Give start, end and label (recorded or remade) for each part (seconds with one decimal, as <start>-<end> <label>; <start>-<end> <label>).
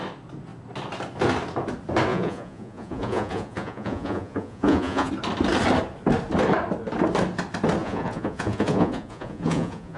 0.0-2.1 recorded; 2.1-5.1 remade; 5.1-7.8 recorded; 7.8-10.0 remade